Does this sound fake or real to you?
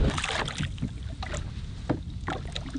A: real